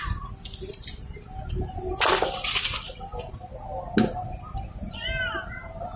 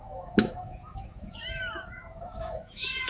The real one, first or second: first